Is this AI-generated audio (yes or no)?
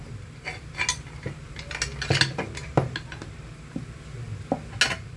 no